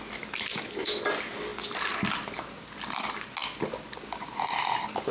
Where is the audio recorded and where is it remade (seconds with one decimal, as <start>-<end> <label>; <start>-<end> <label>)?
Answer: 0.0-0.5 recorded; 0.5-1.0 remade; 1.0-5.1 recorded